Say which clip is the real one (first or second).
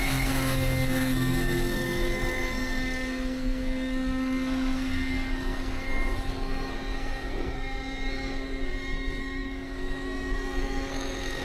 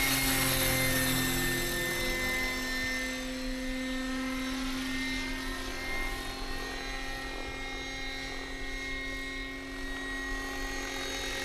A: second